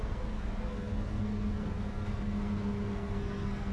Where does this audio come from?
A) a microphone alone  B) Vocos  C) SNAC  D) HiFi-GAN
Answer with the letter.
C